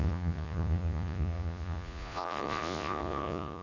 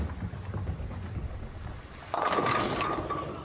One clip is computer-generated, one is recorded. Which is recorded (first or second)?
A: second